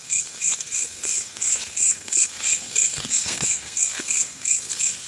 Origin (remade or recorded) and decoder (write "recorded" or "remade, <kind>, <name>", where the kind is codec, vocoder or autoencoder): remade, codec, SNAC